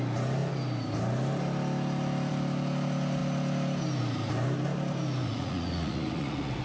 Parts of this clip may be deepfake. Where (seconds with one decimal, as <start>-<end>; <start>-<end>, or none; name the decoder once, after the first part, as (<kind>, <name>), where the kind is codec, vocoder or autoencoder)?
5.2-6.6 (vocoder, Vocos)